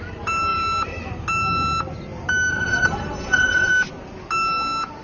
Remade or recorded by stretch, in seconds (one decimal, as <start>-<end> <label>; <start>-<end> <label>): 0.0-2.5 recorded; 2.5-3.7 remade; 3.7-5.0 recorded